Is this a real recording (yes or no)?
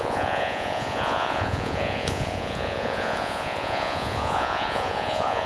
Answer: no